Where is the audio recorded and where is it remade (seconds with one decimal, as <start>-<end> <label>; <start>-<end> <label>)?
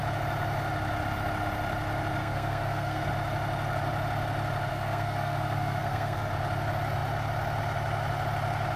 0.0-2.2 recorded; 2.2-3.0 remade; 3.0-4.7 recorded; 4.7-6.3 remade; 6.3-8.8 recorded